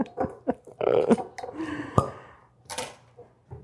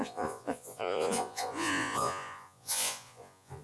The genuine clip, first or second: first